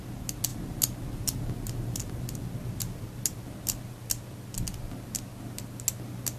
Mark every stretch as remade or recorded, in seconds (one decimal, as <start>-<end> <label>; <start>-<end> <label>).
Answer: 0.0-6.4 recorded